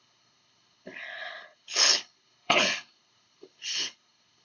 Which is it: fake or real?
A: fake